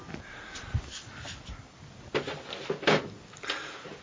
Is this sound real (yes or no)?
yes